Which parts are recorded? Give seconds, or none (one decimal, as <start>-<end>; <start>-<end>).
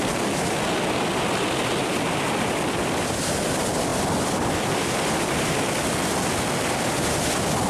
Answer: 0.0-7.7